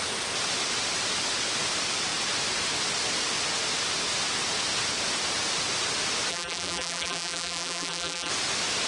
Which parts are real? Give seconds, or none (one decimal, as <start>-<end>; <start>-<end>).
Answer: 0.0-6.3; 8.3-8.9